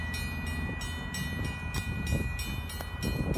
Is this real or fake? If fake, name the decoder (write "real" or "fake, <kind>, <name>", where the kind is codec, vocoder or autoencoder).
real